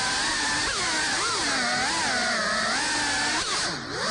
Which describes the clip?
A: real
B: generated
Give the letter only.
A